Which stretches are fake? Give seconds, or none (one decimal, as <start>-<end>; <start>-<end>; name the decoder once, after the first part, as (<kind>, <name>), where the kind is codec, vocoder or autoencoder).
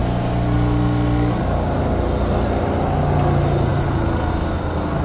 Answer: none